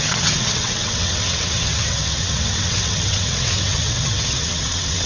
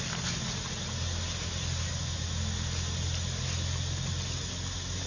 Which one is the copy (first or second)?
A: first